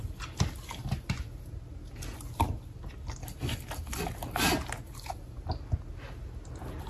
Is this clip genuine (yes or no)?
yes